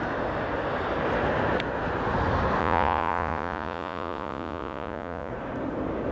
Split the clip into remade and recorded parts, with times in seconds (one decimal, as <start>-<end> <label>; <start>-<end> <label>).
0.0-2.6 recorded; 2.6-5.3 remade; 5.3-6.1 recorded

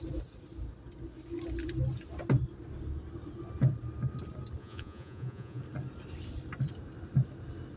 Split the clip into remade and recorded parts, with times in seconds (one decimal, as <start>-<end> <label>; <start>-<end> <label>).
0.0-4.6 recorded; 4.6-5.6 remade; 5.6-7.8 recorded

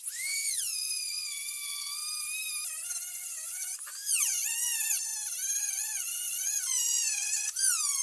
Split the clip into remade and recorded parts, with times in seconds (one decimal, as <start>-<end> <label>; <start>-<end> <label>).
0.0-2.0 remade; 2.0-3.1 recorded; 3.1-5.1 remade; 5.1-5.6 recorded; 5.6-8.0 remade

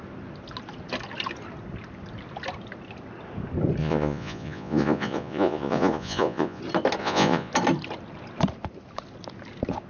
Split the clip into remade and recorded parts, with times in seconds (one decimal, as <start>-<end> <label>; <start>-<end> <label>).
0.0-3.8 recorded; 3.8-6.6 remade; 6.6-7.0 recorded; 7.0-7.5 remade; 7.5-9.9 recorded

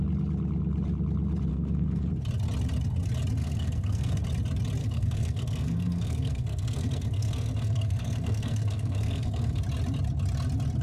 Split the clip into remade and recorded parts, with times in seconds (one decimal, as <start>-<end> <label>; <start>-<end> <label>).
0.0-1.5 recorded; 1.5-2.1 remade; 2.1-3.4 recorded; 3.4-4.2 remade; 4.2-4.8 recorded; 4.8-9.6 remade; 9.6-10.8 recorded

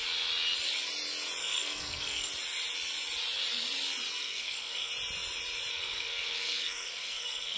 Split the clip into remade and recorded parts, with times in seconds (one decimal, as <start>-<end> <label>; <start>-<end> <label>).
0.0-1.4 recorded; 1.4-2.3 remade; 2.3-4.2 recorded; 4.2-4.9 remade; 4.9-5.7 recorded; 5.7-7.6 remade